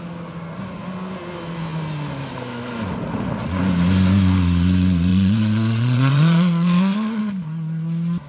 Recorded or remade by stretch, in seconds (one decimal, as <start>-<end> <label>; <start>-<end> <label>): 0.0-5.1 recorded; 5.1-7.2 remade; 7.2-8.3 recorded